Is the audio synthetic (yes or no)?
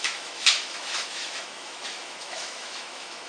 yes